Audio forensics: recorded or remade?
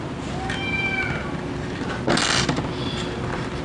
recorded